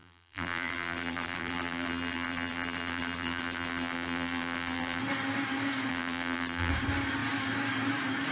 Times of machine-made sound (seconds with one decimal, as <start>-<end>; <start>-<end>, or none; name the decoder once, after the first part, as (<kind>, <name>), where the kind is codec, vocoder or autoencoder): 0.0-5.0 (vocoder, BigVGAN v2); 5.9-6.7